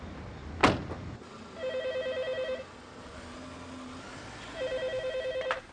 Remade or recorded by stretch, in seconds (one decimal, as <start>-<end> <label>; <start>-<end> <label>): 0.0-5.7 recorded